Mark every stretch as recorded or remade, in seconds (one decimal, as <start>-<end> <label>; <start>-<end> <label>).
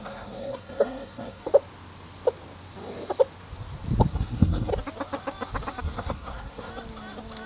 0.0-1.5 remade; 1.5-4.1 recorded; 4.1-4.7 remade; 4.7-5.8 recorded; 5.8-6.7 remade; 6.7-7.5 recorded